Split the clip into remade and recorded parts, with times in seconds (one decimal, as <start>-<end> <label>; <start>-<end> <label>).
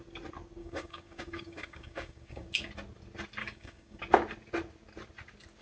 0.0-0.6 recorded; 0.6-2.7 remade; 2.7-3.4 recorded; 3.4-4.0 remade; 4.0-5.6 recorded